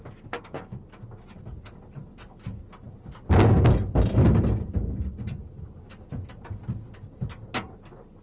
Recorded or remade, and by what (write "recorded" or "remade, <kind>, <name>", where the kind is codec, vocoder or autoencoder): recorded